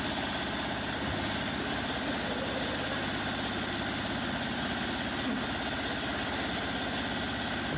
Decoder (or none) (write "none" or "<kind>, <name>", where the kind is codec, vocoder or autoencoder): none